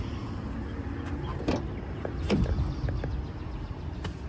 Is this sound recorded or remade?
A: recorded